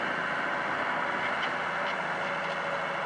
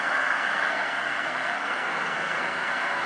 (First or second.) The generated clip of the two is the second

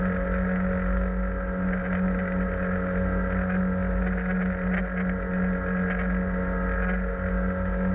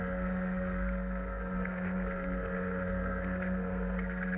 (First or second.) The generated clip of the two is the second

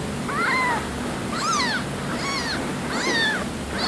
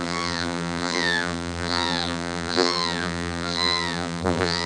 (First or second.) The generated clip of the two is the second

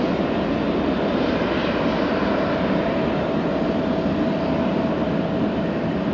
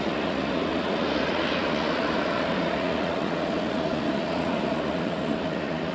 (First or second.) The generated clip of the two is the second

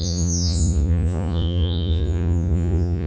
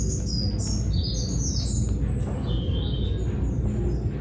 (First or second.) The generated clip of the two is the first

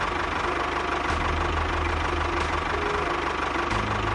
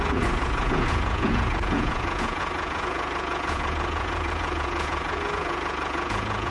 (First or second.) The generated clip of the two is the second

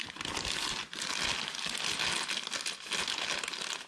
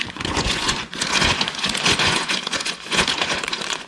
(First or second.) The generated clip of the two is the second